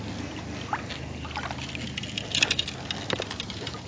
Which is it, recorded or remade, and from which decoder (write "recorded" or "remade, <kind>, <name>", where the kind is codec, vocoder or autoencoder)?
recorded